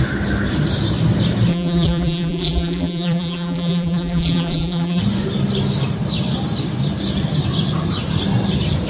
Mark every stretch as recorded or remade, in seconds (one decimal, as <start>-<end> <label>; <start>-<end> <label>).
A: 0.0-1.5 recorded; 1.5-5.0 remade; 5.0-8.9 recorded